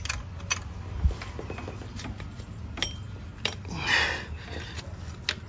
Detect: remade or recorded recorded